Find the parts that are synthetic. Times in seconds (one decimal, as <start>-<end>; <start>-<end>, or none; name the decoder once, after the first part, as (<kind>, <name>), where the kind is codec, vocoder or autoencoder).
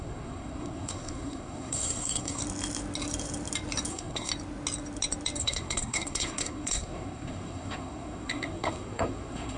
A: 0.0-2.4 (codec, SNAC); 3.9-4.3; 5.4-9.6